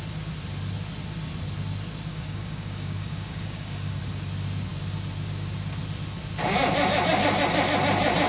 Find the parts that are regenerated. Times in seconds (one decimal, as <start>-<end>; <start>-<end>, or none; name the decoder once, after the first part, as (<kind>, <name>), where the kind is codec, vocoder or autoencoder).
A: 2.1-4.0 (codec, DAC)